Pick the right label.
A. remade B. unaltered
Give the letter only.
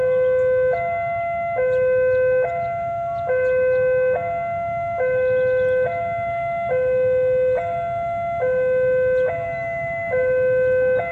B